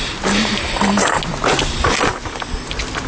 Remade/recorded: recorded